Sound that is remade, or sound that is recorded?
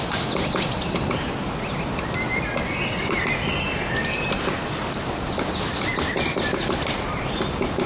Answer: recorded